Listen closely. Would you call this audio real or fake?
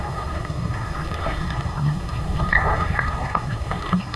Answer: fake